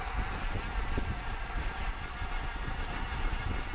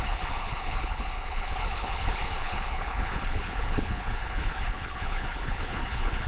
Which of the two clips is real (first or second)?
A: first